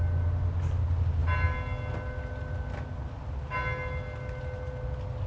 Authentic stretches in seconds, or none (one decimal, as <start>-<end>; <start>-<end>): 0.0-5.3